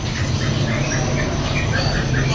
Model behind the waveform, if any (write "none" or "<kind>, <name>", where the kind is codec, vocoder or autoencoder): none